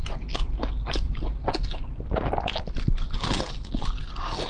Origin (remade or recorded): recorded